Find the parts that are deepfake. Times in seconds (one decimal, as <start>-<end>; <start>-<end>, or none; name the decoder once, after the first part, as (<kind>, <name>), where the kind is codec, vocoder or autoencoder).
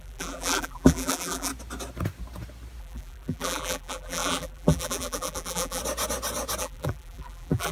0.0-1.5 (vocoder, BigVGAN v2); 2.8-5.8; 6.6-7.7